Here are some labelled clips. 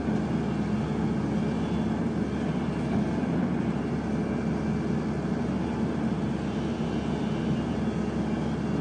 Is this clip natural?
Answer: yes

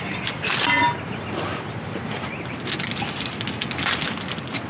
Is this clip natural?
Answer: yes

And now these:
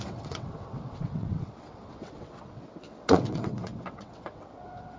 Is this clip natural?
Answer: no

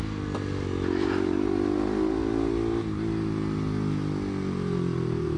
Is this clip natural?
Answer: yes